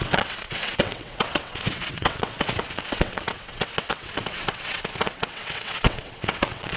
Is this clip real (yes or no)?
no